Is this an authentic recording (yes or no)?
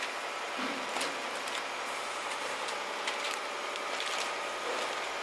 yes